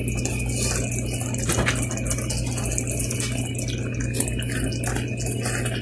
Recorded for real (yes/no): yes